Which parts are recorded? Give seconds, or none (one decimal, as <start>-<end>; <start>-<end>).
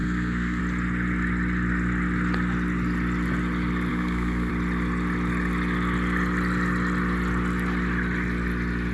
0.6-3.9; 4.5-8.9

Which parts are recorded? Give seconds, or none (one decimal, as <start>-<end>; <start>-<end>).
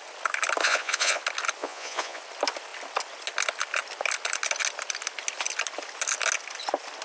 0.0-0.6; 1.2-1.6; 2.2-7.0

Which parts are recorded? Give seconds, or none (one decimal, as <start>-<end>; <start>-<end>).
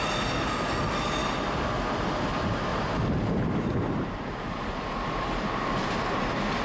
0.0-2.7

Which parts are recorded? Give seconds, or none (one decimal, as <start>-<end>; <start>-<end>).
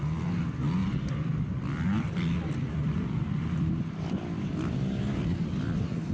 0.0-0.8; 4.5-6.1